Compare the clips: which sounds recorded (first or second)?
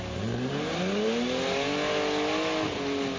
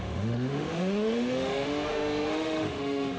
first